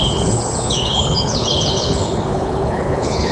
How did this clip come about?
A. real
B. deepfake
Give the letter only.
B